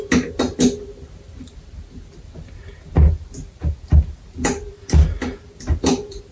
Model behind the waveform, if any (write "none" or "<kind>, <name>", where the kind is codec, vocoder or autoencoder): none